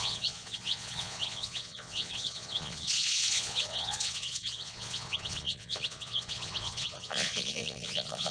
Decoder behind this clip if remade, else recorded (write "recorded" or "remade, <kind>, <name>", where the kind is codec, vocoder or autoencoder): remade, vocoder, Vocos